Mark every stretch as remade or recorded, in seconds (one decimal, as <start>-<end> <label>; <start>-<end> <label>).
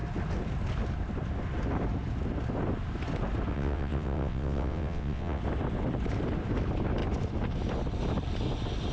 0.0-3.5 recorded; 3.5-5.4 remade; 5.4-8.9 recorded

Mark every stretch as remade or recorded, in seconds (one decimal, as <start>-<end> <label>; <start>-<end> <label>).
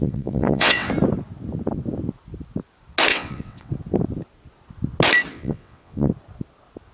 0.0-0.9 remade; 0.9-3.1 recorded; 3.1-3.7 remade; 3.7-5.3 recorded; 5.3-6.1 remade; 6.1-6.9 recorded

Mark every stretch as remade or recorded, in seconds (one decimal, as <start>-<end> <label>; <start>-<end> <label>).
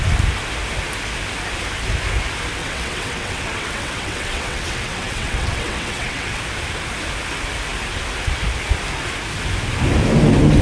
0.0-2.6 recorded; 2.6-6.4 remade; 6.4-10.6 recorded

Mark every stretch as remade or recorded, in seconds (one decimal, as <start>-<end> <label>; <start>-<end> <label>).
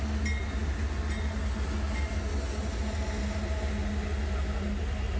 0.0-5.2 recorded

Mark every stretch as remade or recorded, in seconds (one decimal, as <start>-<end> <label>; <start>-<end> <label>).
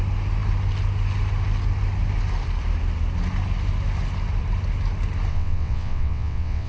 0.0-5.3 recorded; 5.3-6.7 remade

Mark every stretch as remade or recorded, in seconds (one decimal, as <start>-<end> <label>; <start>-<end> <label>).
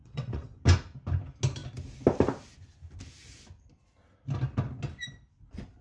0.0-0.6 remade; 0.6-5.8 recorded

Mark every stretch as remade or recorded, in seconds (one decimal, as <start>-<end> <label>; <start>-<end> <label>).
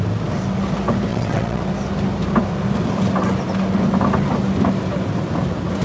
0.0-1.1 recorded; 1.1-1.6 remade; 1.6-5.8 recorded